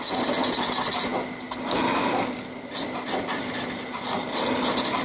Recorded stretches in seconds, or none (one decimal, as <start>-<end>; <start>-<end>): 0.0-5.0